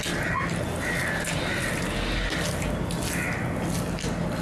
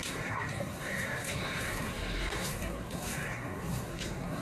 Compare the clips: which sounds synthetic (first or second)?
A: second